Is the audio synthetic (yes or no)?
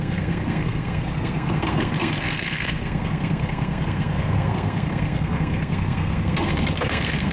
yes